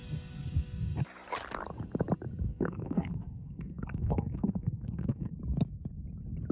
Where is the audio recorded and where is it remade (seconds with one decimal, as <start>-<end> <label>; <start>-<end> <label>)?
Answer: 0.0-2.5 recorded; 2.5-5.3 remade; 5.3-6.5 recorded